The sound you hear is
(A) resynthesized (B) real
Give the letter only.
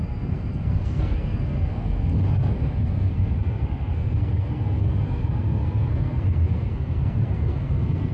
A